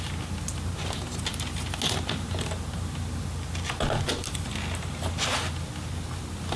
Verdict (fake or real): real